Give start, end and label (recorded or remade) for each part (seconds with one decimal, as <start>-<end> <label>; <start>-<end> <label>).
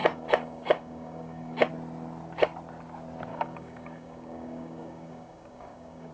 0.0-1.7 remade; 1.7-3.3 recorded; 3.3-6.1 remade